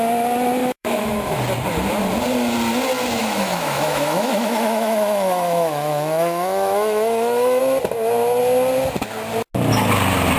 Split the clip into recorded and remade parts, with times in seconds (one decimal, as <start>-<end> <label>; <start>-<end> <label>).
0.0-0.6 recorded; 0.6-1.4 remade; 1.4-3.2 recorded; 3.2-7.6 remade; 7.6-10.4 recorded